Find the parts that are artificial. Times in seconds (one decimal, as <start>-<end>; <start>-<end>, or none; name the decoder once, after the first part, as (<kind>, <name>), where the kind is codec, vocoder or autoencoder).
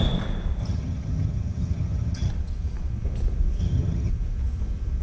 0.6-2.3 (vocoder, HiFi-GAN); 3.6-4.1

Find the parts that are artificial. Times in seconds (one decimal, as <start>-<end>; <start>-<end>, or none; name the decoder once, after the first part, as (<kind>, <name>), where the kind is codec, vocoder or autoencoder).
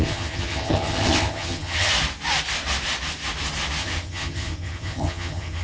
0.0-1.9 (vocoder, HiFi-GAN); 3.8-5.6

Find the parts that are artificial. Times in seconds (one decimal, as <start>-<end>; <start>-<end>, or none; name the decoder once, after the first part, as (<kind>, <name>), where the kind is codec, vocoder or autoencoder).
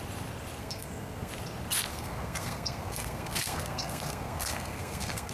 0.6-1.3 (codec, SNAC); 1.9-5.3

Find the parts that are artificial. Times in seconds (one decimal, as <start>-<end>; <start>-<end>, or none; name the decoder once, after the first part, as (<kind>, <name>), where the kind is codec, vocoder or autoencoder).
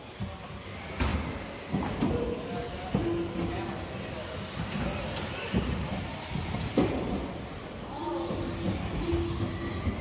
none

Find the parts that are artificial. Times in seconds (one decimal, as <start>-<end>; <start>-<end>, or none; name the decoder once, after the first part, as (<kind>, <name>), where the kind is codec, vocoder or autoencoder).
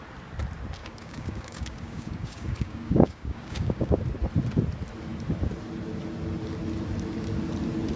0.8-4.0 (codec, DAC)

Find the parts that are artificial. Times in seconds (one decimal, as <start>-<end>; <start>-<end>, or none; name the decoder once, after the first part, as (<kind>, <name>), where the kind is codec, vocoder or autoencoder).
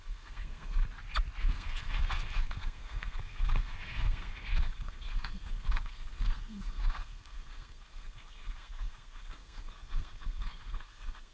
0.0-0.8 (codec, SNAC); 1.4-11.3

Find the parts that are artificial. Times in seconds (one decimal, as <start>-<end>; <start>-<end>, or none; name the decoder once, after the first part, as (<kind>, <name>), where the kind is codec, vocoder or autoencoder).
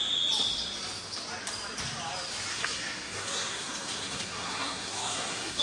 2.5-5.6 (codec, SNAC)